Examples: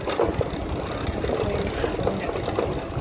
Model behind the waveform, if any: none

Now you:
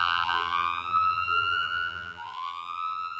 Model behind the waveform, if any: vocoder, BigVGAN v2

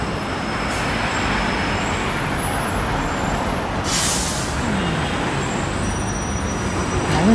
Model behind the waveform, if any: none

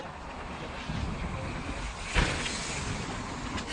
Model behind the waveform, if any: none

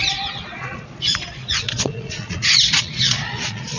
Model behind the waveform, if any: vocoder, Vocos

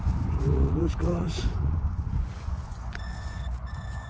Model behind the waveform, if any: vocoder, Vocos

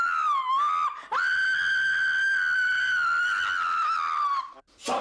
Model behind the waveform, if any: none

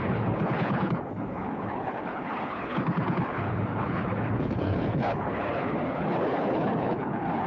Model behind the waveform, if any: codec, HILCodec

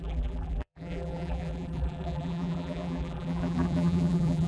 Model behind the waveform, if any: vocoder, BigVGAN v2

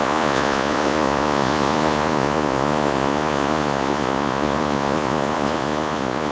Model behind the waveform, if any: vocoder, Vocos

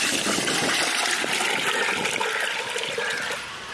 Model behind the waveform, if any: none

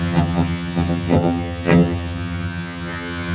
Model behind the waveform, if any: vocoder, HiFi-GAN